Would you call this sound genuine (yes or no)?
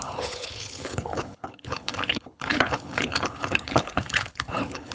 no